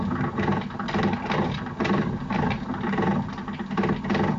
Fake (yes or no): no